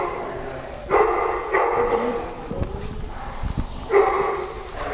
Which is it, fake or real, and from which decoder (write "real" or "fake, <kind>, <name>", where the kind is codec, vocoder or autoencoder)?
real